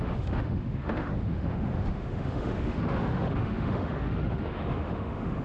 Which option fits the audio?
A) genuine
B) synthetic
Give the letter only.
B